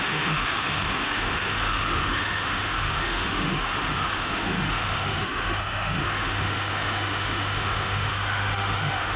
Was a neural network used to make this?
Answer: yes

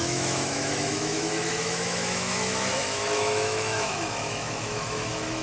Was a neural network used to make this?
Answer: yes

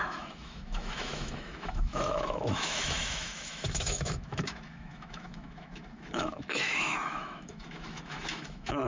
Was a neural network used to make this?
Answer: yes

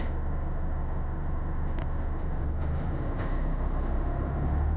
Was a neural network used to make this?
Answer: yes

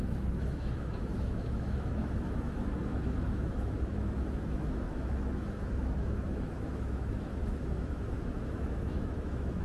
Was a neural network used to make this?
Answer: yes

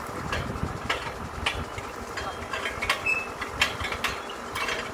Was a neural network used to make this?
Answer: no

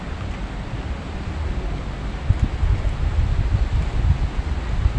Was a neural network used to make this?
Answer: no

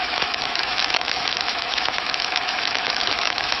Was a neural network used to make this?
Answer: yes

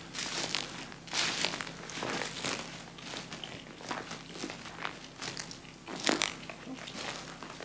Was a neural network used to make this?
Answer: no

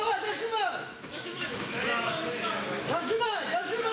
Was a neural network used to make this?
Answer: yes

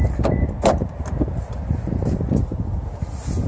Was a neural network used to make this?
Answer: no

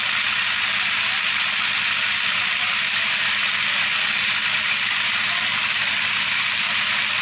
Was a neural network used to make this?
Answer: no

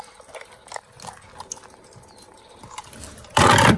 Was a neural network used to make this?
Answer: no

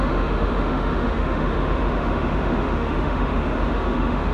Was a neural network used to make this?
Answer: yes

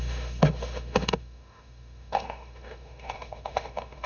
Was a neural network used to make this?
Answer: yes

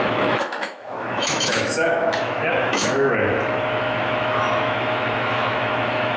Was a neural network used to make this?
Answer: yes